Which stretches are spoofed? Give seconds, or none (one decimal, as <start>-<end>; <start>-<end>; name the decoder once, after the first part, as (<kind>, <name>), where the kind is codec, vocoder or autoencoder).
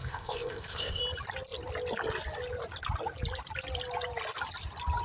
0.0-1.0 (codec, ZipCodec)